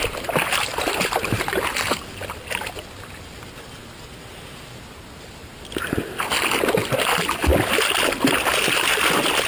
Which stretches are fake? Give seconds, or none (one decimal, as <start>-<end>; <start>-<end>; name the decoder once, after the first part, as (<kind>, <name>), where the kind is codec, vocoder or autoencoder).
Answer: 0.7-1.7 (vocoder, BigVGAN v2)